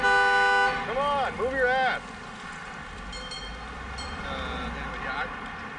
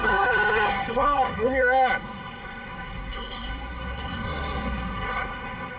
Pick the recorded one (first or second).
first